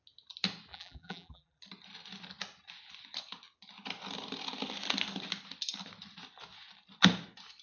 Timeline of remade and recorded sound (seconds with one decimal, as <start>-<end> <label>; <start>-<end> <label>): 0.0-0.7 recorded; 0.7-1.6 remade; 1.6-7.6 recorded